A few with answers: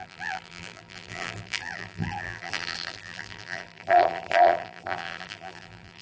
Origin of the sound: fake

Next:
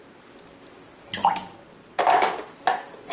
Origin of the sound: real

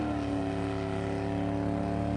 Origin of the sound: real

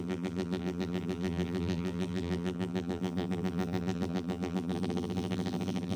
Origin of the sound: fake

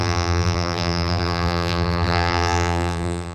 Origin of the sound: fake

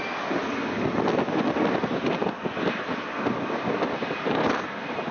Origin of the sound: real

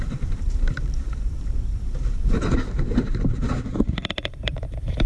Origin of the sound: fake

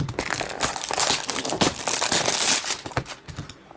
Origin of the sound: real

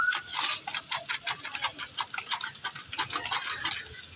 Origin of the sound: real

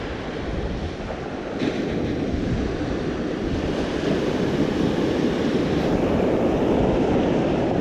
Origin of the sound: fake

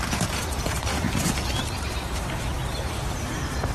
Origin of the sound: fake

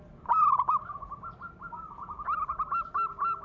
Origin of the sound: fake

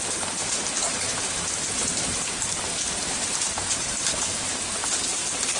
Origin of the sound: fake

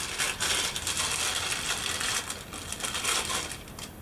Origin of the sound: real